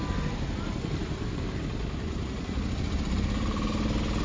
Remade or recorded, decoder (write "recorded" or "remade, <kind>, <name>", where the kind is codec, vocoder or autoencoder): recorded